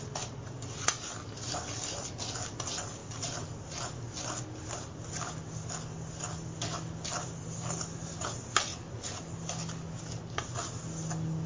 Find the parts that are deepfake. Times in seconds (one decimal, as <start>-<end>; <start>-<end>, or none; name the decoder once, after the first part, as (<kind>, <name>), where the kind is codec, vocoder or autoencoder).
none